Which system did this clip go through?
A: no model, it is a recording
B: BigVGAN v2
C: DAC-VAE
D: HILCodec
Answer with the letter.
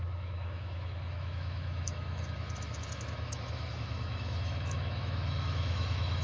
C